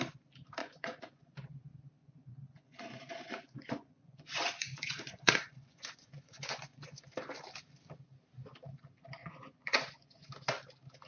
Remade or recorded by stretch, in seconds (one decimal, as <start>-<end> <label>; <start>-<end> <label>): 0.0-0.6 recorded; 0.6-1.2 remade; 1.2-2.0 recorded; 2.0-7.0 remade; 7.0-9.2 recorded; 9.2-10.3 remade; 10.3-11.1 recorded